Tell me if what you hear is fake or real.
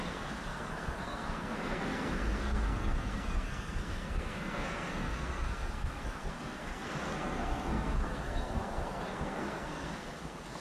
fake